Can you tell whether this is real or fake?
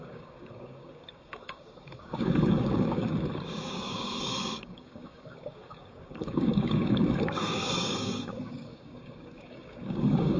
fake